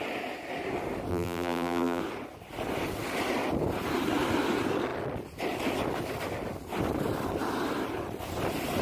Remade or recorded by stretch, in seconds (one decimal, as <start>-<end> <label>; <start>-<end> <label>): 0.0-1.1 recorded; 1.1-2.0 remade; 2.0-8.8 recorded